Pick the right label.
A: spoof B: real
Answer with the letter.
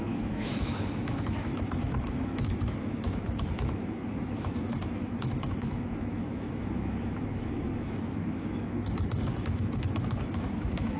A